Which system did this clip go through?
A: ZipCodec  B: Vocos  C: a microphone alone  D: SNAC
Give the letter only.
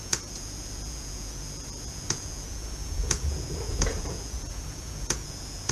B